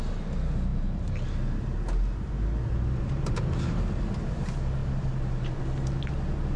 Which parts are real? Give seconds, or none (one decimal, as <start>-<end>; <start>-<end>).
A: 0.0-4.8; 5.6-6.6